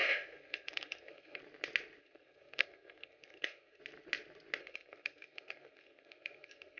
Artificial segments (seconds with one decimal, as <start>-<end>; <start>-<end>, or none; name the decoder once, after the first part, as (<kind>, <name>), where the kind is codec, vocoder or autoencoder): 0.0-1.4 (codec, SNAC); 2.0-3.8; 4.6-6.8

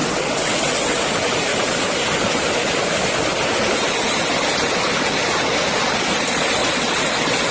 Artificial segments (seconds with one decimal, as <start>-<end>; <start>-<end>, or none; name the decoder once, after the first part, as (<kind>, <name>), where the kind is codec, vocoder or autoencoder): 0.0-1.0 (vocoder, WaveNeXt); 6.6-7.5

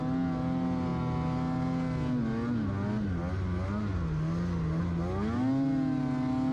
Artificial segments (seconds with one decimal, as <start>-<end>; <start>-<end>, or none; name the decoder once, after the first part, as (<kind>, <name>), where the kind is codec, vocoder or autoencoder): none

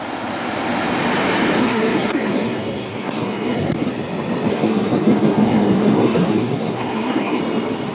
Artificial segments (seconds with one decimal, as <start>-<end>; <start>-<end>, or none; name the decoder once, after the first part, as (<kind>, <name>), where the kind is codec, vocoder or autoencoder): 1.6-3.9 (codec, SNAC); 4.5-7.4

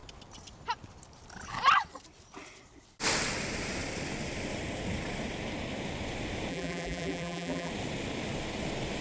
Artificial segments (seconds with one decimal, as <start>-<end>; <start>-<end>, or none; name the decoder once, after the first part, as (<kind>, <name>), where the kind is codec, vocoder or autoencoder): 6.5-7.7 (vocoder, BigVGAN v2)